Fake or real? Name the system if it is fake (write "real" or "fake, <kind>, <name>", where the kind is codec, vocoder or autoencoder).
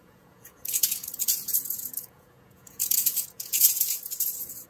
fake, vocoder, Vocos